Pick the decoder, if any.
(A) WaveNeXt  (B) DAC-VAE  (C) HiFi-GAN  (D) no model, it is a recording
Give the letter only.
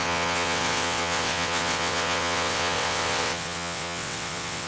A